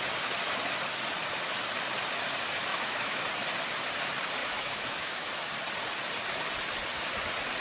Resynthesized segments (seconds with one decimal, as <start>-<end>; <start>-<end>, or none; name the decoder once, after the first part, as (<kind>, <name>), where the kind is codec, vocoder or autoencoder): 2.7-3.2 (autoencoder, DAC-VAE); 4.4-5.3